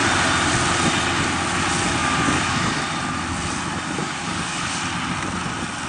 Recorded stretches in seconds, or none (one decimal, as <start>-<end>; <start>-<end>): 0.0-2.0; 2.8-4.0; 4.8-5.9